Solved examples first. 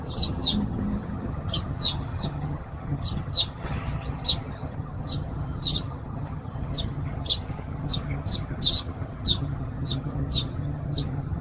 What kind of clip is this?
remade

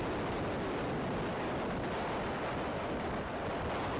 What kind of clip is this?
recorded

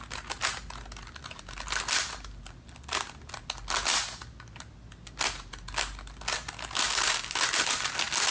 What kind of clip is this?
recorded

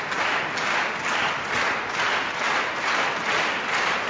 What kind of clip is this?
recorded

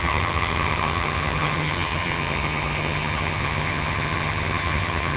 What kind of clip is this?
remade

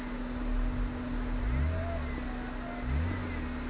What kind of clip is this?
recorded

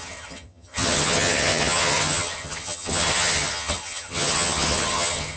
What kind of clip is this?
remade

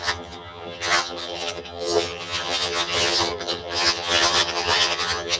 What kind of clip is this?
remade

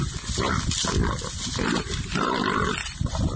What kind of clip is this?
recorded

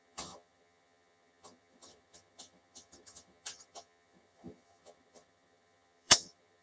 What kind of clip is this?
remade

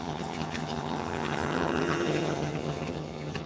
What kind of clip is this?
remade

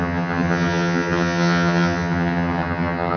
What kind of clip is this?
remade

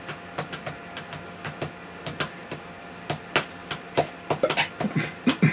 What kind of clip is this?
recorded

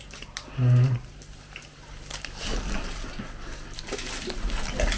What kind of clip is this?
recorded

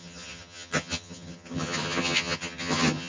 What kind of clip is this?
remade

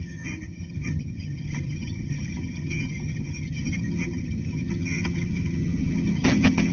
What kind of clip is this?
remade